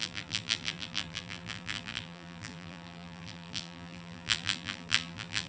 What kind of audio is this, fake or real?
fake